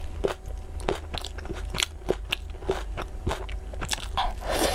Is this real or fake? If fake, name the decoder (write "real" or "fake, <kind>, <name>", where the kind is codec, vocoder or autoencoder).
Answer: real